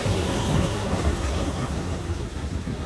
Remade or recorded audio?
remade